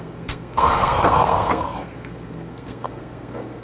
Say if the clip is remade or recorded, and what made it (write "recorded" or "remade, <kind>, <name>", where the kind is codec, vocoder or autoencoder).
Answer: remade, codec, SNAC